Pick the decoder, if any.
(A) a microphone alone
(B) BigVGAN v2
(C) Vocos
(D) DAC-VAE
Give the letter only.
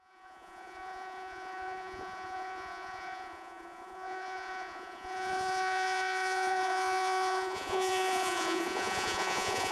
C